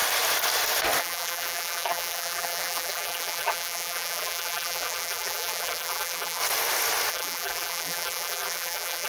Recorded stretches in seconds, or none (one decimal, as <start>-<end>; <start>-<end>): 0.0-1.0; 6.4-7.1